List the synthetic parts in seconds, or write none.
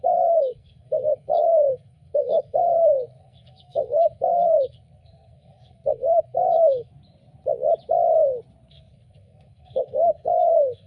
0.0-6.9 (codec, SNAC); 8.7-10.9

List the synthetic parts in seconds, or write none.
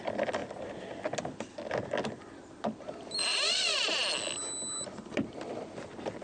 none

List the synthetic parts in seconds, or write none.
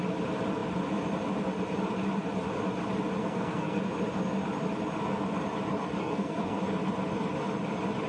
3.2-3.8 (codec, SNAC); 6.0-6.6